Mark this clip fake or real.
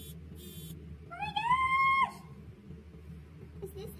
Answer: real